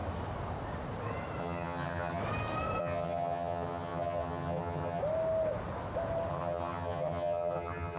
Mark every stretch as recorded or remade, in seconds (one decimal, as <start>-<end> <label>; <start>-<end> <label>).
0.0-1.4 recorded; 1.4-2.2 remade; 2.2-2.8 recorded; 2.8-5.0 remade; 5.0-6.3 recorded; 6.3-8.0 remade

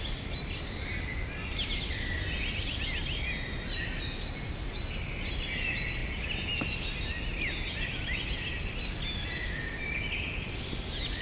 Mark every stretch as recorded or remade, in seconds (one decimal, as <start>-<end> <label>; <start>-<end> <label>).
0.0-11.2 recorded

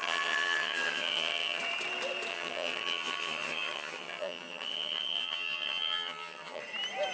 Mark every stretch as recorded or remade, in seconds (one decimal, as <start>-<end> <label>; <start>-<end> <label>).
0.0-1.6 remade; 1.6-2.3 recorded; 2.3-6.6 remade; 6.6-7.1 recorded

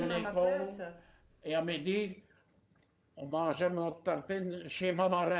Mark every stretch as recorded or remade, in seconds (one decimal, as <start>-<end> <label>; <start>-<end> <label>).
0.0-2.1 recorded; 2.1-5.4 remade

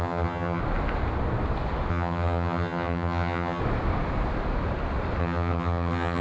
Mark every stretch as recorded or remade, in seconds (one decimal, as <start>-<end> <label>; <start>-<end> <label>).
0.0-0.6 remade; 0.6-1.9 recorded; 1.9-3.6 remade; 3.6-5.2 recorded; 5.2-6.2 remade

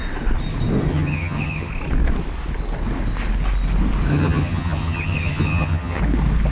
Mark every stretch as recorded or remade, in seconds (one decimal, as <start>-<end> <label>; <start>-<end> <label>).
0.0-0.9 recorded; 0.9-1.7 remade; 1.7-4.1 recorded; 4.1-6.0 remade; 6.0-6.5 recorded